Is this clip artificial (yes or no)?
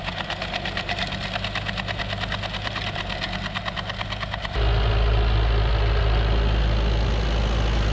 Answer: no